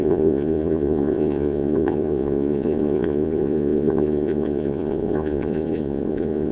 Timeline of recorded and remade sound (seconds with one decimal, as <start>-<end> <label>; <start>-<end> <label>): 0.0-6.5 remade